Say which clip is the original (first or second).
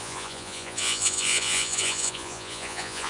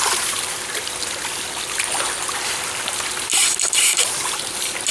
second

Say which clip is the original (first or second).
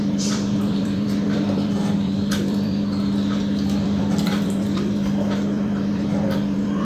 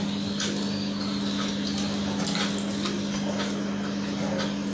second